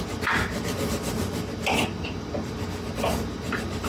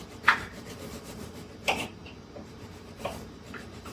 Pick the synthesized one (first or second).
second